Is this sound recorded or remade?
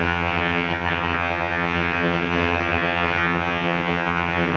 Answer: remade